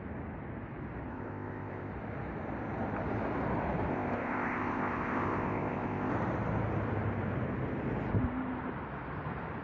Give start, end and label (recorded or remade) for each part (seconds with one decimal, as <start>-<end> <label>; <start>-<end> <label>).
0.0-1.1 recorded; 1.1-1.9 remade; 1.9-3.9 recorded; 3.9-6.1 remade; 6.1-9.6 recorded